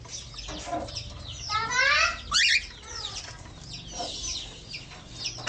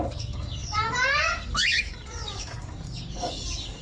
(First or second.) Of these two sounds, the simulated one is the second